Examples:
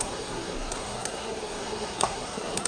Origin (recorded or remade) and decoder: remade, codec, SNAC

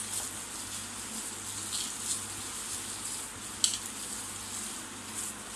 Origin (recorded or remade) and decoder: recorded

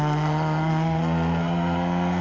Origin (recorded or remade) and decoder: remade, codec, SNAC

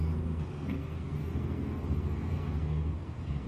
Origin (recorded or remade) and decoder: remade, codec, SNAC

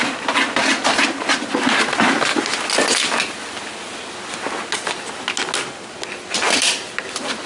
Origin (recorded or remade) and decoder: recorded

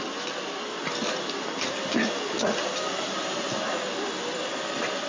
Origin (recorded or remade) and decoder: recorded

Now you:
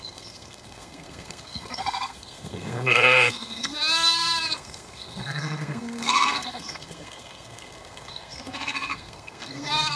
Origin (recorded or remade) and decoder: remade, codec, SNAC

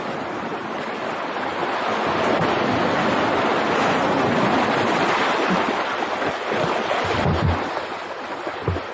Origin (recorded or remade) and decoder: recorded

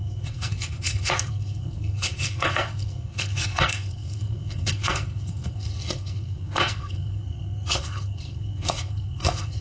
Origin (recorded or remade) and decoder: remade, codec, SNAC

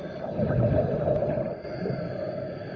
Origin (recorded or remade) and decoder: recorded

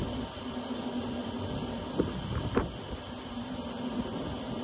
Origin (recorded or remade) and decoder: recorded